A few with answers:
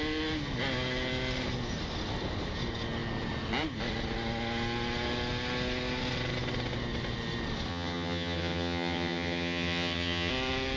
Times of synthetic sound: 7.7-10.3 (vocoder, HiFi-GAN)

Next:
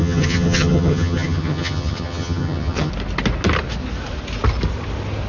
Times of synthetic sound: 0.0-2.9 (vocoder, HiFi-GAN)

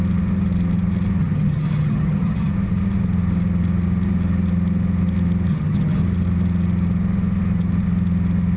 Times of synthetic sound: 1.2-2.5 (vocoder, HiFi-GAN); 5.5-6.0

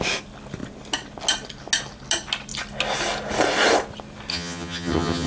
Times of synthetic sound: 4.3-5.3 (vocoder, HiFi-GAN)

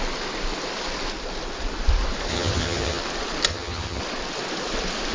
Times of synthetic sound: 2.3-3.0 (vocoder, HiFi-GAN); 3.5-4.0

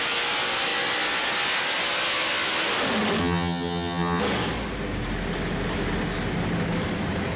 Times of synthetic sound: 3.2-4.2 (vocoder, HiFi-GAN)

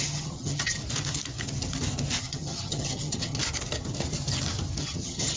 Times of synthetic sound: 0.0-0.8 (vocoder, HiFi-GAN); 2.2-3.4; 4.8-5.4

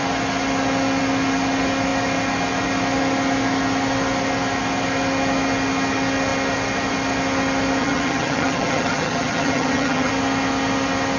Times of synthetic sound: 7.8-10.1 (vocoder, HiFi-GAN)